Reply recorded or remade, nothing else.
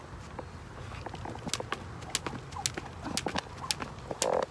recorded